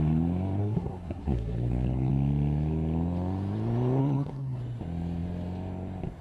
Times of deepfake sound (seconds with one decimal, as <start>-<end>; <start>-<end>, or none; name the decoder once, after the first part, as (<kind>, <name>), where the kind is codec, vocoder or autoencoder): 0.6-2.1 (codec, SNAC); 4.0-4.6